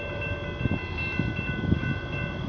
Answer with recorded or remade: recorded